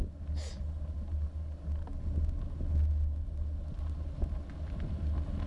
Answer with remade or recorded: recorded